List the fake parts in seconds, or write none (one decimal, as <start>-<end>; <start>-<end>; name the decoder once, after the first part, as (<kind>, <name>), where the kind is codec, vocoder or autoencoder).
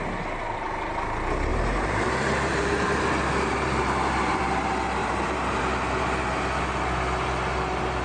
1.5-4.4 (vocoder, BigVGAN v2); 5.0-5.6